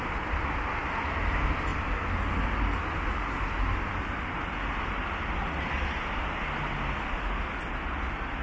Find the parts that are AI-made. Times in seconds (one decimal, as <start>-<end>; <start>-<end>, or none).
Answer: none